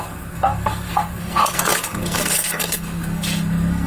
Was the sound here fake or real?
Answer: fake